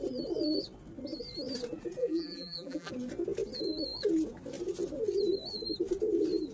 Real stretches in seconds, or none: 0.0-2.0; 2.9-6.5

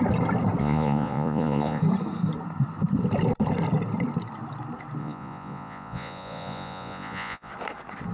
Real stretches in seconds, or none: 0.0-0.6; 1.8-5.0; 7.5-8.1

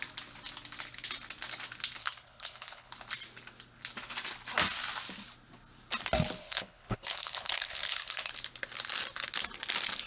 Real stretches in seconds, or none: 0.0-2.0; 2.9-6.4; 8.3-10.1

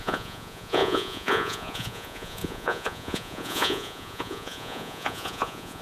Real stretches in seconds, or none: none

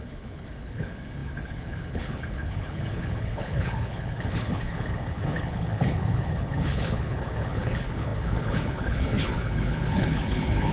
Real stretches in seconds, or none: none

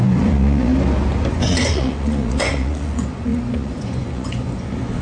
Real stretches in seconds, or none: 0.7-1.3